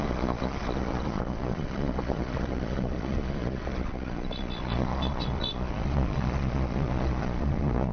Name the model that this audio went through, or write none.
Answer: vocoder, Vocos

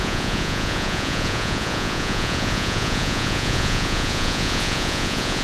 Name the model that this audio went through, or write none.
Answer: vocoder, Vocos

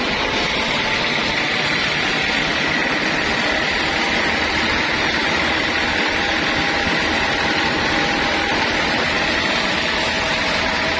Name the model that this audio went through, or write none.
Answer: none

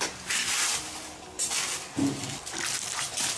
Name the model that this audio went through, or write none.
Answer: none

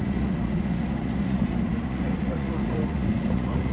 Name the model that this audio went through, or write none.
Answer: vocoder, Vocos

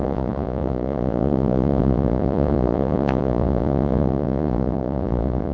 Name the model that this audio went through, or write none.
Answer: vocoder, Vocos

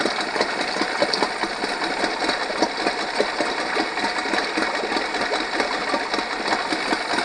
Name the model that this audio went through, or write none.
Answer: none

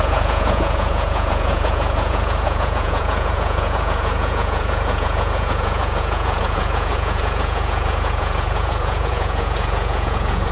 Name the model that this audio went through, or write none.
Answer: vocoder, Vocos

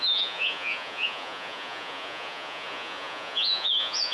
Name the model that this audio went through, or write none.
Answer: vocoder, Vocos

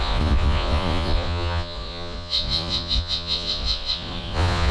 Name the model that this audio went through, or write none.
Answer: vocoder, Vocos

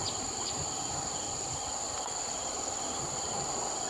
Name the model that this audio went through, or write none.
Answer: none